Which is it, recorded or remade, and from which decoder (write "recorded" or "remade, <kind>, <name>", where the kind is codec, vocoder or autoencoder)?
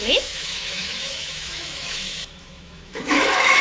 remade, autoencoder, DAC-VAE